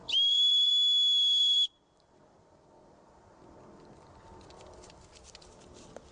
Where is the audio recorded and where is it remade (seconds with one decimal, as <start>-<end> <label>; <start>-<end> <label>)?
0.0-0.7 remade; 0.7-1.4 recorded; 1.4-5.1 remade; 5.1-6.1 recorded